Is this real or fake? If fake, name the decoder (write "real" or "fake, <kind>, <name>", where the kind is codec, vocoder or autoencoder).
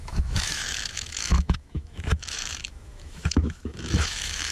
fake, autoencoder, DAC-VAE